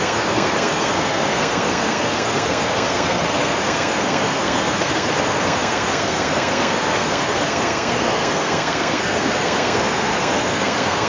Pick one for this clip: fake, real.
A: fake